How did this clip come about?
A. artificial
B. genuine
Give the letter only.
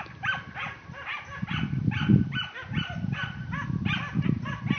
B